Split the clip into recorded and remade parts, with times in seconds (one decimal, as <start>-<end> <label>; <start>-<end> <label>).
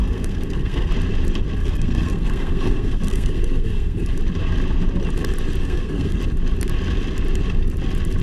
0.0-0.9 remade; 0.9-1.6 recorded; 1.6-4.2 remade; 4.2-5.6 recorded; 5.6-6.2 remade; 6.2-8.2 recorded